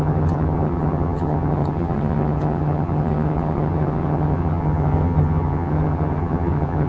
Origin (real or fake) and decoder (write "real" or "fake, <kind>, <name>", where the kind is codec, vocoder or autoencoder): fake, vocoder, HiFi-GAN